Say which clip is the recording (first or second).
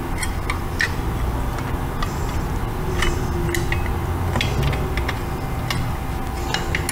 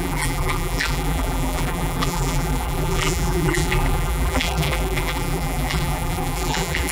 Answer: first